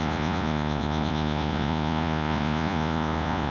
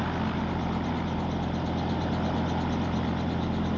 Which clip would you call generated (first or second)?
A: first